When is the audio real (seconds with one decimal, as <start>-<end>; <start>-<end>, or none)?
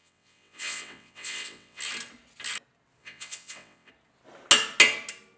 1.8-3.0; 3.9-5.4